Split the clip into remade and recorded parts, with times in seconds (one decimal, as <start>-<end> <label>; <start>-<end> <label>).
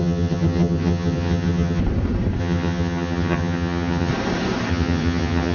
0.0-1.8 remade; 1.8-2.4 recorded; 2.4-4.1 remade; 4.1-4.7 recorded; 4.7-5.5 remade